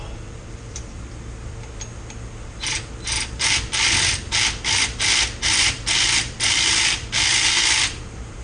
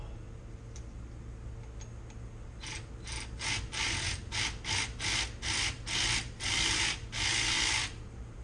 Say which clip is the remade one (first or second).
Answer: first